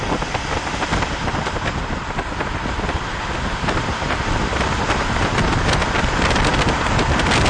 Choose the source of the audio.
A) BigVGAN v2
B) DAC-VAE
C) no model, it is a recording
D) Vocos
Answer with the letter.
C